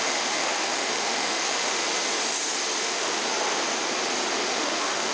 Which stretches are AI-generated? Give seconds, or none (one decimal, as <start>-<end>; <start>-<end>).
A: 0.0-1.8; 2.8-3.2; 4.4-5.1